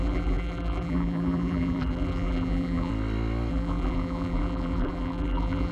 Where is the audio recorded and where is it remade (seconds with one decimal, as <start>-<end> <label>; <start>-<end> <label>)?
0.0-2.9 remade; 2.9-3.5 recorded; 3.5-5.7 remade